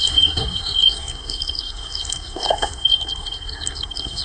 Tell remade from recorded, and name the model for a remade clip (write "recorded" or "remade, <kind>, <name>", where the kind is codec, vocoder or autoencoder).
remade, codec, SNAC